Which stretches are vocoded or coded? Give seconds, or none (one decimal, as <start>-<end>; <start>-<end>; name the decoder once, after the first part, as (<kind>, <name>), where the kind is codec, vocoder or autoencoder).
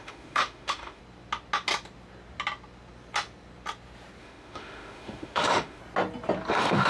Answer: 0.0-1.0 (autoencoder, DAC-VAE); 4.2-5.8; 6.5-6.9